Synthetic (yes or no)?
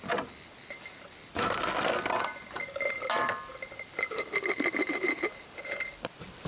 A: no